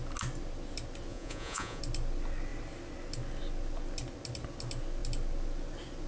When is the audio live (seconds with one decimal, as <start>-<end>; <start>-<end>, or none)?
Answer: 0.0-1.1; 1.8-6.1